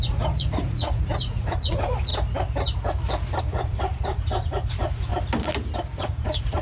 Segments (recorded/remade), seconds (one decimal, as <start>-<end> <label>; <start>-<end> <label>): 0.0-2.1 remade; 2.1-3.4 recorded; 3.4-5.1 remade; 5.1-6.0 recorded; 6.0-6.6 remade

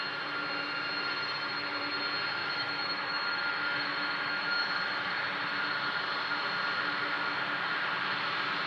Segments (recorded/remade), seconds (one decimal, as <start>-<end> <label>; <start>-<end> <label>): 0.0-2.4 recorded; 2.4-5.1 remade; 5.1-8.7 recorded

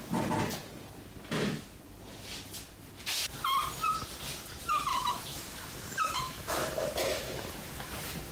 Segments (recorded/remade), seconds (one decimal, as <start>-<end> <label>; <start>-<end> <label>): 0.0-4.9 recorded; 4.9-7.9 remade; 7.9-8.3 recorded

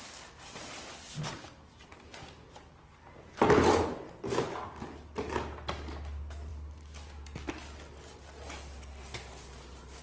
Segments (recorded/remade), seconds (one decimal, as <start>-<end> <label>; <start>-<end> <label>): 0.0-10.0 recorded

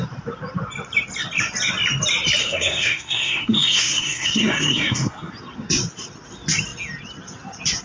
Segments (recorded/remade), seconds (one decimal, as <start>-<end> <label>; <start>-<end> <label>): 0.0-2.4 recorded; 2.4-5.3 remade; 5.3-7.8 recorded

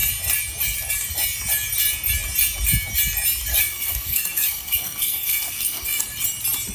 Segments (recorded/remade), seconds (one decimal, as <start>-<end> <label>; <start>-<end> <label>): 0.0-3.5 recorded; 3.5-6.0 remade; 6.0-6.7 recorded

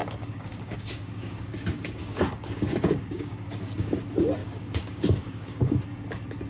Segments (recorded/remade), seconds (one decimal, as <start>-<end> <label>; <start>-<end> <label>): 0.0-3.9 remade; 3.9-4.4 recorded; 4.4-5.8 remade; 5.8-6.5 recorded

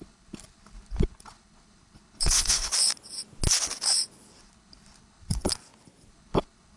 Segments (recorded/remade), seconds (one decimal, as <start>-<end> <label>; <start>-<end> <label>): 0.0-2.7 remade; 2.7-4.4 recorded; 4.4-5.5 remade; 5.5-6.1 recorded; 6.1-6.8 remade